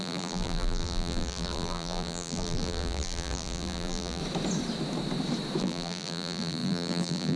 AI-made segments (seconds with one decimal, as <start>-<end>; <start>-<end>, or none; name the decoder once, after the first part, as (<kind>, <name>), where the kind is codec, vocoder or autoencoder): 0.0-4.2 (vocoder, BigVGAN v2); 5.6-7.4